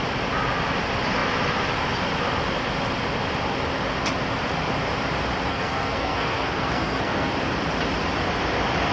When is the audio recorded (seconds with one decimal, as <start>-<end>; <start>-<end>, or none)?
0.0-5.5; 7.3-8.9